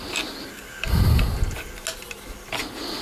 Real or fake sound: real